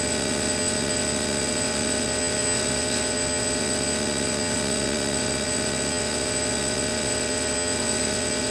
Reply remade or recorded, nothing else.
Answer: remade